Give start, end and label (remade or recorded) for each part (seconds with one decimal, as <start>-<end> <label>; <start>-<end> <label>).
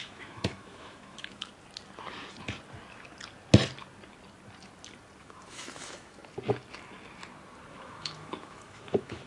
0.0-1.5 remade; 1.5-5.2 recorded; 5.2-6.2 remade; 6.2-7.7 recorded; 7.7-9.3 remade